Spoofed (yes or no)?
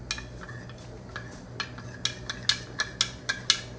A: no